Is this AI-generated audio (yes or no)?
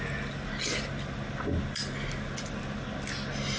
no